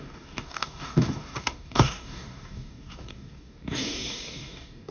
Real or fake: fake